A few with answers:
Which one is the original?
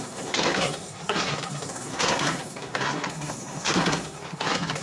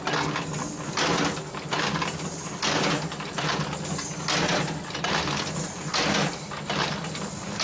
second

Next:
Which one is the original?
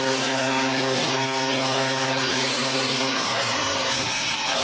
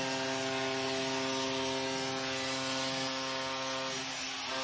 second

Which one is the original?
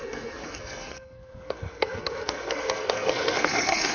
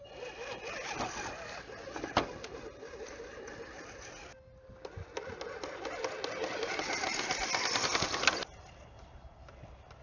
second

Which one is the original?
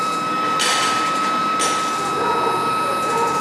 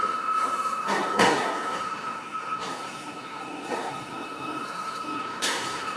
first